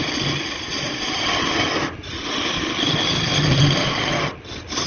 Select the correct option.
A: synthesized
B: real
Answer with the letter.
B